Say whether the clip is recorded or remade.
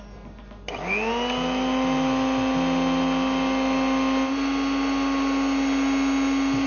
recorded